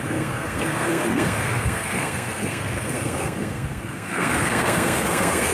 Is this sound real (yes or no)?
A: no